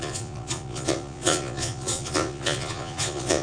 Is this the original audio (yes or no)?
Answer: no